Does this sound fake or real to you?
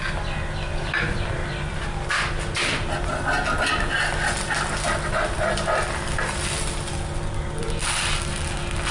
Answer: real